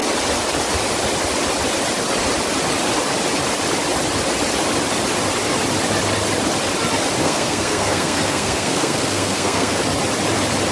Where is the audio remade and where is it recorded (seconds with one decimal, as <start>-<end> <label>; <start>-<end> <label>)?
0.0-7.2 recorded; 7.2-9.8 remade; 9.8-10.7 recorded

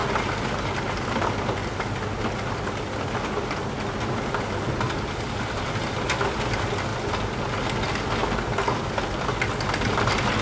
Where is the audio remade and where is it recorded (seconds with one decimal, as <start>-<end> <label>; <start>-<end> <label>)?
0.0-10.4 recorded

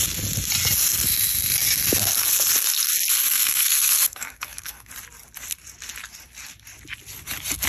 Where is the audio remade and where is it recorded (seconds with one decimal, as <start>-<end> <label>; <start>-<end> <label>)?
0.0-3.3 recorded; 3.3-4.9 remade; 4.9-7.7 recorded

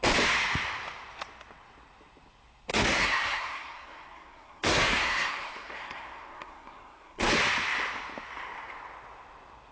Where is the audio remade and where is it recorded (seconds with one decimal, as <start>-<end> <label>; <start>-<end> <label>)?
0.0-2.7 recorded; 2.7-7.3 remade; 7.3-9.7 recorded

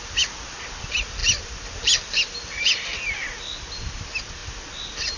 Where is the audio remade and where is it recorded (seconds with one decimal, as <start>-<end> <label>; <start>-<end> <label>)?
0.0-5.2 recorded